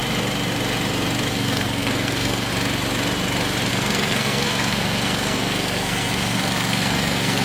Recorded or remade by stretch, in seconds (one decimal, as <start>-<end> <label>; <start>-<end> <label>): 0.0-1.3 recorded; 1.3-2.5 remade; 2.5-3.7 recorded; 3.7-7.4 remade